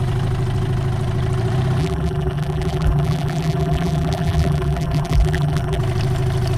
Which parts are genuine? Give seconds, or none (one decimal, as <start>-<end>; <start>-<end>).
0.0-1.8; 5.8-6.6